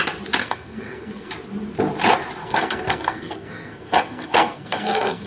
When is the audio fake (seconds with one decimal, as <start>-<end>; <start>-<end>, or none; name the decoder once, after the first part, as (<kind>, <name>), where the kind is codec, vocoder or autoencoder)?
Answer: 0.4-1.3 (codec, SNAC); 2.4-5.3